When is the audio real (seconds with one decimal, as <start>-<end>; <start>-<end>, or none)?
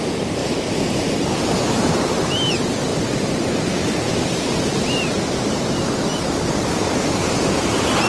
0.0-0.4; 2.3-2.9; 5.7-8.1